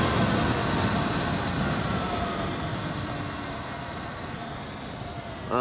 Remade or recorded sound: recorded